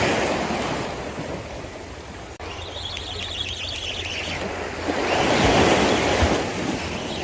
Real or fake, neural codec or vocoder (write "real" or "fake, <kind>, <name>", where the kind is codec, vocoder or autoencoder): real